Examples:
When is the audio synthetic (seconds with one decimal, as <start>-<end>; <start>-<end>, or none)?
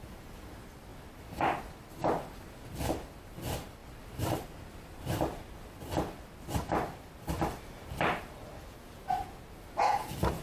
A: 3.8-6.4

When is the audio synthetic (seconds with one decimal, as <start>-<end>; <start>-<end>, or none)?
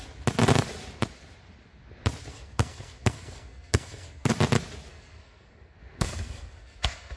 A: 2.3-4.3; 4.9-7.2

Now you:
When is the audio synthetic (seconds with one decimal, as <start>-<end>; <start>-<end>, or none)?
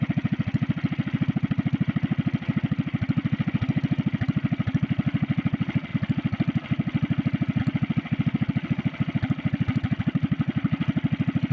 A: 5.9-7.6